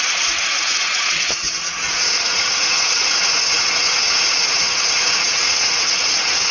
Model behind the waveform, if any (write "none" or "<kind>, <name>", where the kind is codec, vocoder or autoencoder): vocoder, Vocos